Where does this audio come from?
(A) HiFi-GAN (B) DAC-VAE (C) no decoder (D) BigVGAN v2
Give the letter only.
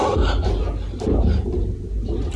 C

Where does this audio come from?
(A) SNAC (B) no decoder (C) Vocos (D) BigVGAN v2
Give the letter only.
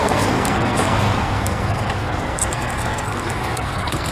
A